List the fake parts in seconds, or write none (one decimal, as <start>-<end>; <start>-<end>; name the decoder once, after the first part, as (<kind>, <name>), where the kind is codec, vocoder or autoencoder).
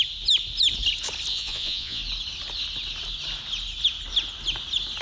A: 1.3-2.0 (vocoder, Vocos)